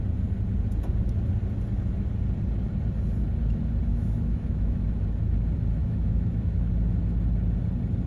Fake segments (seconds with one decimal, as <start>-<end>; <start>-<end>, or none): 3.9-4.9; 5.8-6.7